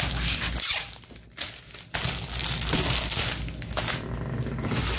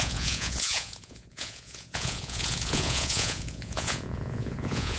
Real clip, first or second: first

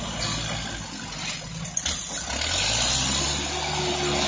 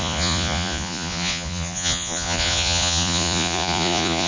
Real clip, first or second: first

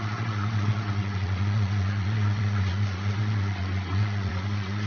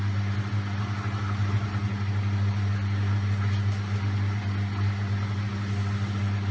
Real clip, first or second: second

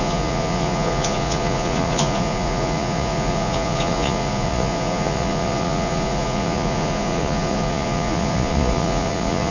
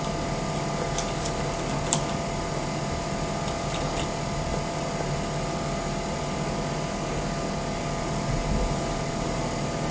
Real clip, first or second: second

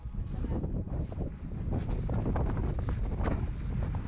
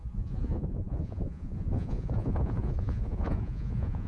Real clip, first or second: first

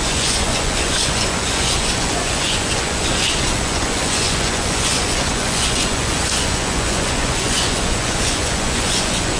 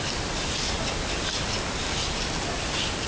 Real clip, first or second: second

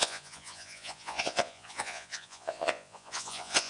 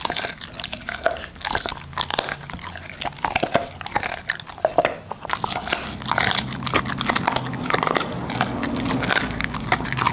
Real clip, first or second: second